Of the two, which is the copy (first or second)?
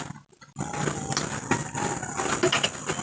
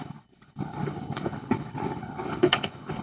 second